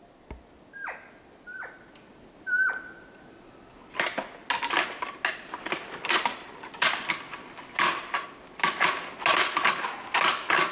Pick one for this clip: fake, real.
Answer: real